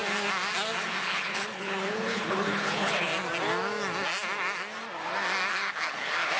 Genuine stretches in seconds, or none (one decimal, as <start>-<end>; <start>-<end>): 0.0-0.8; 3.1-5.5